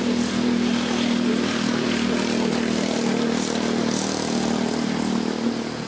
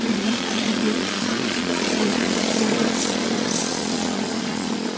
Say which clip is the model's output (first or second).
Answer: second